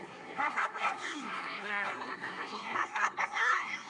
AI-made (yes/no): yes